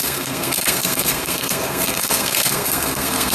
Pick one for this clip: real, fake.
fake